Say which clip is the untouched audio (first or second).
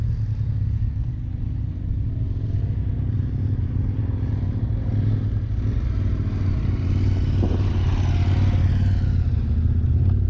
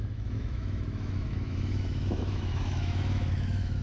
first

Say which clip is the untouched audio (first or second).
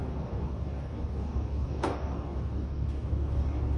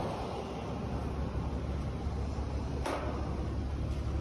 second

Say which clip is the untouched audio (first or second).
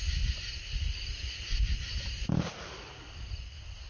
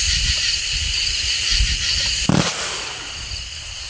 first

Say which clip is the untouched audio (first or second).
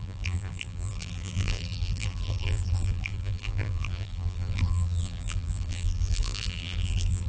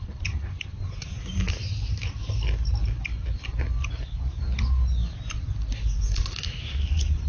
second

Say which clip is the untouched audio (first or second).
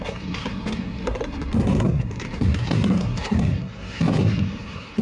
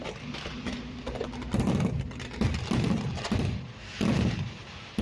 second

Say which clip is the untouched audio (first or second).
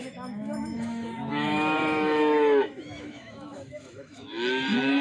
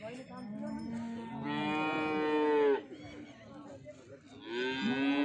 second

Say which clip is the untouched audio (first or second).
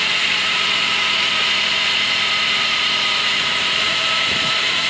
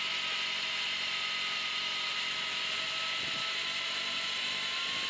second